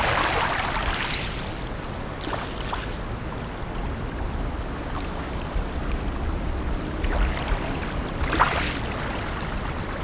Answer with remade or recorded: recorded